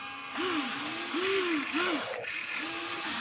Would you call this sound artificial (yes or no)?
no